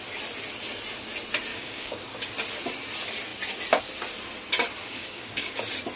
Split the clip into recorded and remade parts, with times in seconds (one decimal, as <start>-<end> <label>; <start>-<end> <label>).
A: 0.0-1.5 recorded; 1.5-2.3 remade; 2.3-4.8 recorded; 4.8-5.6 remade; 5.6-6.0 recorded